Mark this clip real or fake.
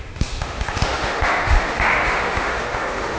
fake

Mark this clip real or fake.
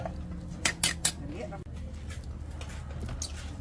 real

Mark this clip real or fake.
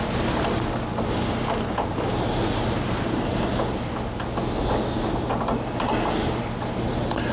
real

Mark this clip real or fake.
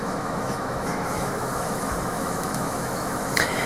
fake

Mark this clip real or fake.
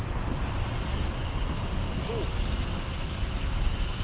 real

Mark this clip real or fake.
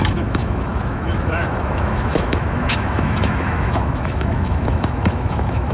fake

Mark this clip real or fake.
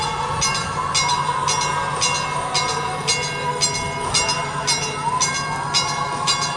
real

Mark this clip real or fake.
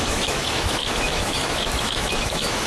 fake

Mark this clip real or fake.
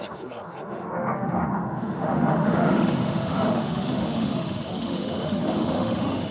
fake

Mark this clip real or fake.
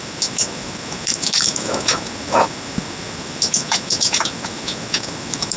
fake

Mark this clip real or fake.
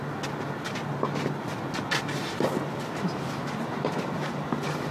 real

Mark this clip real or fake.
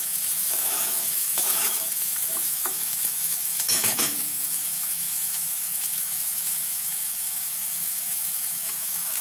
fake